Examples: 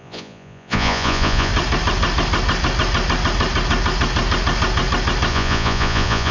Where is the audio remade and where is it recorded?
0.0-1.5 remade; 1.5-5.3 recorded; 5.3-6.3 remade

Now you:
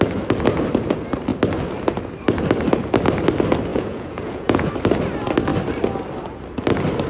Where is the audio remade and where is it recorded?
0.0-3.7 recorded; 3.7-4.7 remade; 4.7-7.1 recorded